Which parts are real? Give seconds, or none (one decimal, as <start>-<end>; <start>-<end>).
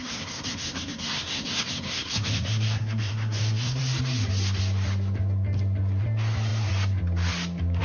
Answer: 3.8-7.8